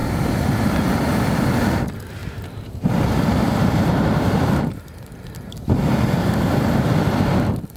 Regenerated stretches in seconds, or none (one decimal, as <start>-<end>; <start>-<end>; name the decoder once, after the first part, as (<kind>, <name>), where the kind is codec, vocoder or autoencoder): 0.0-1.3 (vocoder, BigVGAN v2); 2.2-6.9